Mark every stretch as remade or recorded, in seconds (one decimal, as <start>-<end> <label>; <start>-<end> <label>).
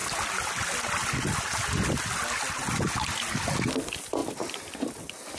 0.0-5.4 recorded